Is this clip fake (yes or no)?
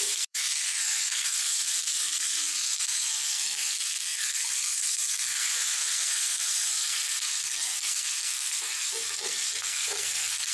yes